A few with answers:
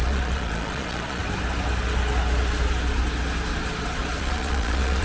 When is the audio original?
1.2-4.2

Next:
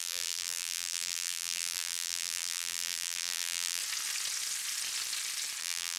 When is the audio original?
3.8-5.6